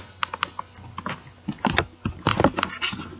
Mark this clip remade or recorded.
recorded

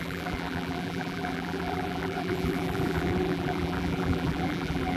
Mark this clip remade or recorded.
remade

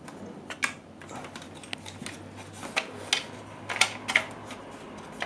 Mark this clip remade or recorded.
recorded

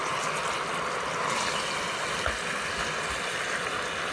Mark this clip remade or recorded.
recorded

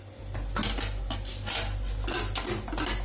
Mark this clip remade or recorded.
recorded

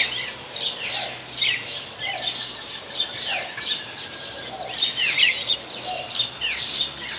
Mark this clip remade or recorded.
recorded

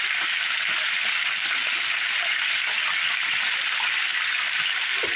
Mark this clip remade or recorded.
recorded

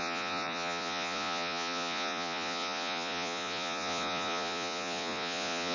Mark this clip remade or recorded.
remade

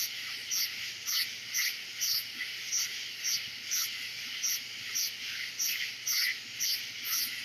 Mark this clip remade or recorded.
recorded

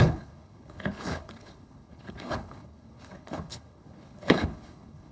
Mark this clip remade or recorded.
remade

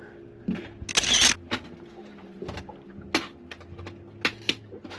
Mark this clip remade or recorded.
recorded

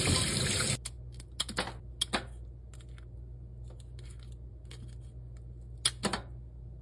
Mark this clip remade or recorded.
recorded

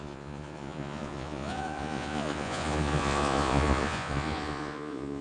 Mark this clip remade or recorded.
remade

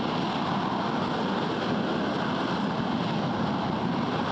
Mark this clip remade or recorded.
recorded